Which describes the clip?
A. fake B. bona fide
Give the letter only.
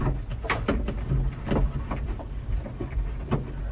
B